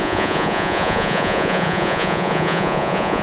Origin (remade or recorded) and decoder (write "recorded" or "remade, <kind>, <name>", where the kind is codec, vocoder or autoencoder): remade, vocoder, Vocos